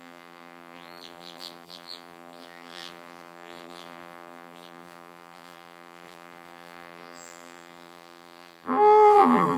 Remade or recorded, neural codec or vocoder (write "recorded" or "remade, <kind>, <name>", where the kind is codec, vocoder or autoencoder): remade, vocoder, BigVGAN v2